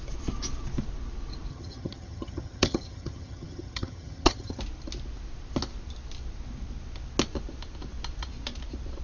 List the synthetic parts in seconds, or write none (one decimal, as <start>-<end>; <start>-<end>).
1.5-4.6